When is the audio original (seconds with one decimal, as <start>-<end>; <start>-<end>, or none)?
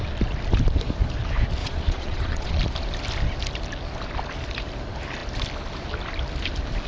0.0-1.6; 2.6-6.9